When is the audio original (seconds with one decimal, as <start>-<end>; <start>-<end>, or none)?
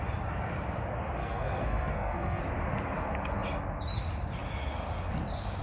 0.0-1.2; 2.4-5.6